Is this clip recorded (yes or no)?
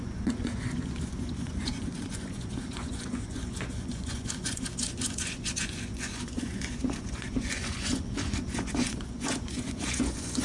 no